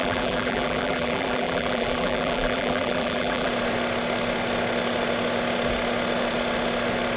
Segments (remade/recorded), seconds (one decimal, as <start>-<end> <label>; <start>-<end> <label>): 0.0-3.5 remade; 3.5-7.2 recorded